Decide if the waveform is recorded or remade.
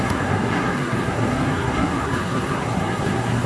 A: remade